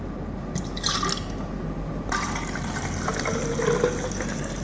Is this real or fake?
real